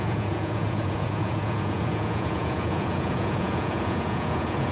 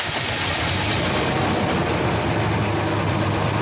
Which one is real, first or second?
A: second